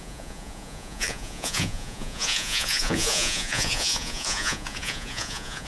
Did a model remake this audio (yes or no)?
yes